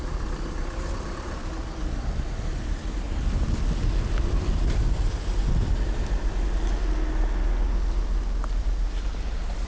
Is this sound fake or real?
real